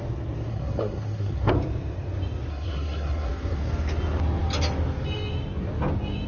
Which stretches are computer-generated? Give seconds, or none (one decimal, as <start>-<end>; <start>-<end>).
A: 0.5-1.5; 2.5-3.6